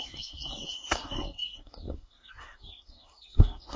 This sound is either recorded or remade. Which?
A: remade